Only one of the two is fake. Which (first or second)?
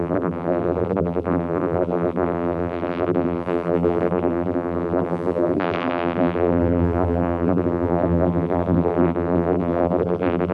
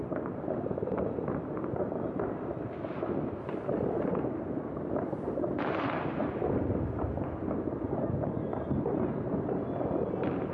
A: first